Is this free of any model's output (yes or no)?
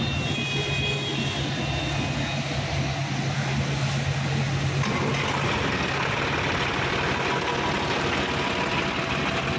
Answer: yes